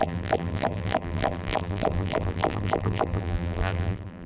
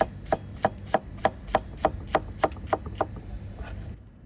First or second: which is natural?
second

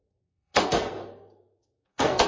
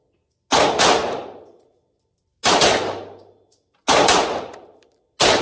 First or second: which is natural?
second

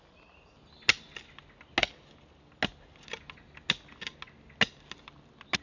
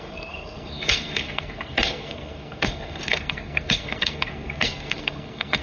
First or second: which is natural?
first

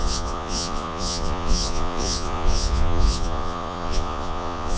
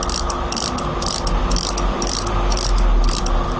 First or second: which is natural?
second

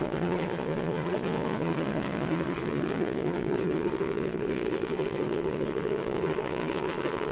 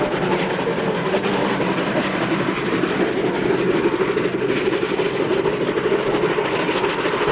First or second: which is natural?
second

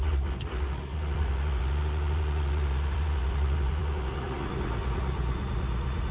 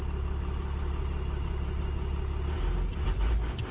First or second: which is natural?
second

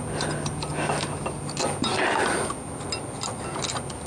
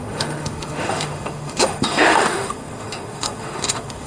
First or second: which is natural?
first